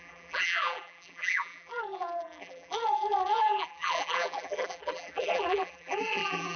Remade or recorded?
remade